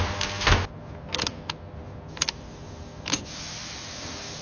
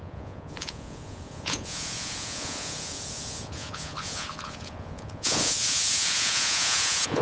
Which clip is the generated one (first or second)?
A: second